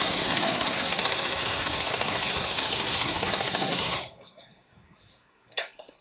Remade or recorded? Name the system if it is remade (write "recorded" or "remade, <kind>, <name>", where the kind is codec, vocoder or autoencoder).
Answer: remade, codec, SNAC